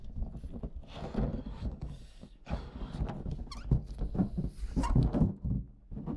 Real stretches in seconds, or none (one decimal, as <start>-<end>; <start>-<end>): 0.0-1.3; 2.9-6.2